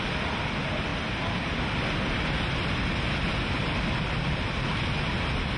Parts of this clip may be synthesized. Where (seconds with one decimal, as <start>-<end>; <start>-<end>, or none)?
none